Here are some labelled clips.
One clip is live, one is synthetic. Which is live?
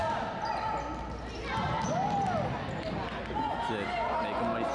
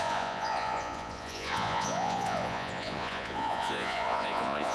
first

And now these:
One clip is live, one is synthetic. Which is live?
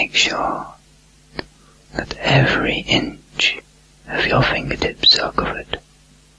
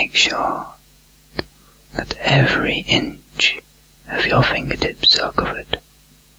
first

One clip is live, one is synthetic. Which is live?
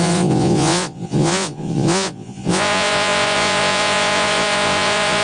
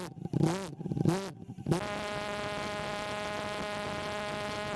second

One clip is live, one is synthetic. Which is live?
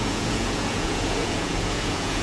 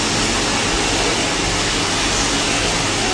second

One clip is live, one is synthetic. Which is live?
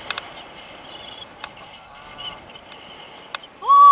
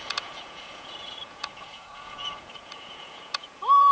first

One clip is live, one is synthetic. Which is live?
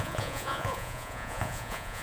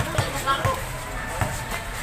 second